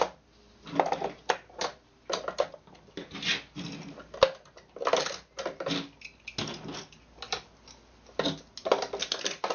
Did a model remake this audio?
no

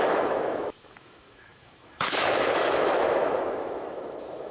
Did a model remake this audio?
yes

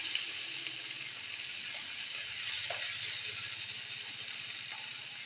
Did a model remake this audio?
no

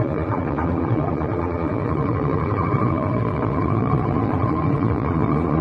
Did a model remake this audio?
yes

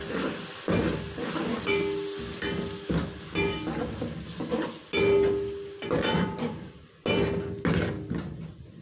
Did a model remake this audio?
no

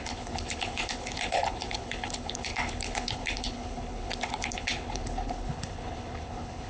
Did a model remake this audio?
yes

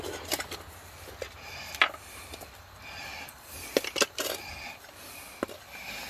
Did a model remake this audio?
no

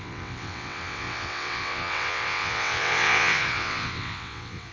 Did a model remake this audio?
yes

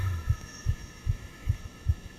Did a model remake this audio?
yes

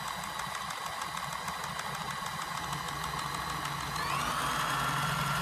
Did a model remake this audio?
no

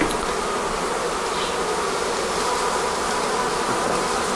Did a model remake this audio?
no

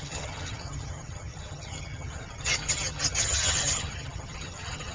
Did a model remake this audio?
yes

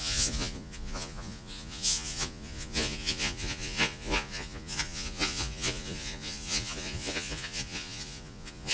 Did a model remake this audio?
yes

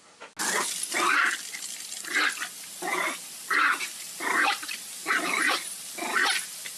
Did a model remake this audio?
no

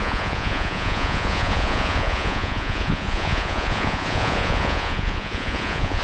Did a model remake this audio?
yes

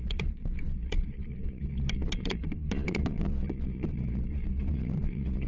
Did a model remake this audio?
yes